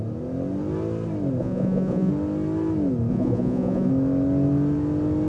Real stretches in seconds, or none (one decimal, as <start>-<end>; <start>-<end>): 0.0-1.4; 2.1-3.1; 3.9-5.3